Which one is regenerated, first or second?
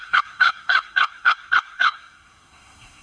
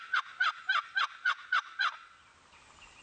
first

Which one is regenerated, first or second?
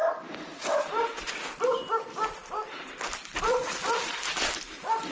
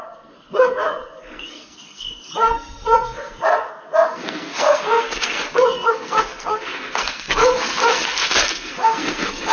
second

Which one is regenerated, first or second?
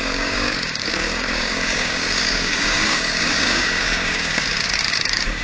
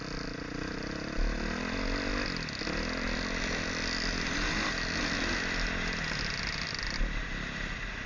first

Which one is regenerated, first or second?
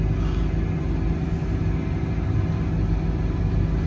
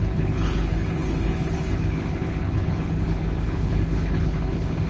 second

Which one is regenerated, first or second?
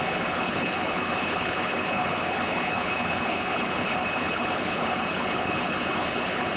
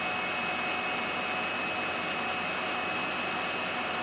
first